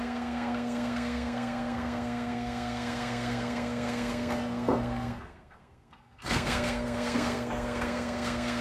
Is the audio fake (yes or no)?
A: yes